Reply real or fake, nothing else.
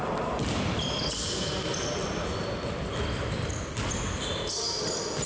real